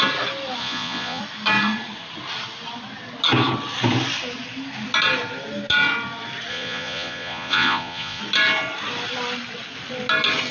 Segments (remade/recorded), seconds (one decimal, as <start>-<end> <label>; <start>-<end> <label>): 0.0-0.6 recorded; 0.6-1.2 remade; 1.2-6.5 recorded; 6.5-8.2 remade; 8.2-10.5 recorded